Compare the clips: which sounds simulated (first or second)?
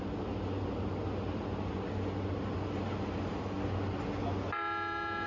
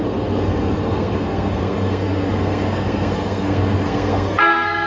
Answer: second